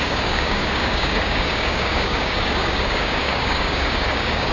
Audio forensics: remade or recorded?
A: remade